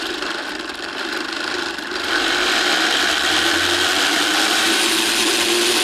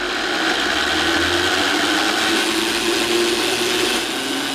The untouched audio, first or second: second